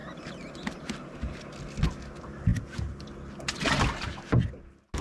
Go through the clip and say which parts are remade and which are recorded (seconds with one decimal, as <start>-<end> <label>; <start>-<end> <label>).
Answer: 0.0-5.0 recorded